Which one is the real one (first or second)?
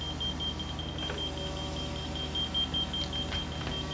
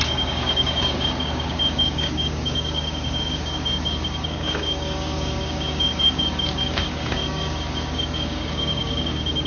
first